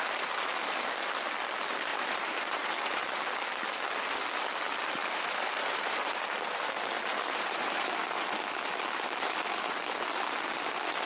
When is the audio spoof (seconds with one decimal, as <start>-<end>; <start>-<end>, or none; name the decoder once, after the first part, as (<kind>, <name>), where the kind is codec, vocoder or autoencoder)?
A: 1.9-3.2 (vocoder, BigVGAN v2); 5.0-6.1; 7.1-8.0